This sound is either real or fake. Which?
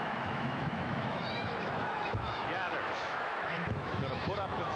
fake